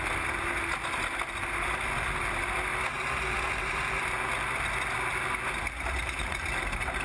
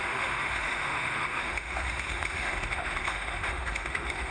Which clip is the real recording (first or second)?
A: first